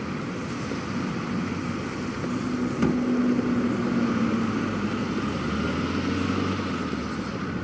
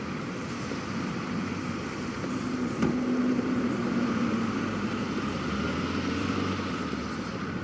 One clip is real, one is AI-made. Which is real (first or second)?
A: first